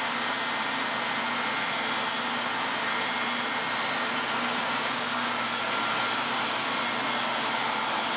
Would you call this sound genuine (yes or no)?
yes